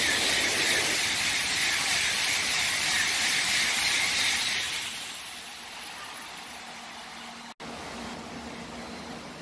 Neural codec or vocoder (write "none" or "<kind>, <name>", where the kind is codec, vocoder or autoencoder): none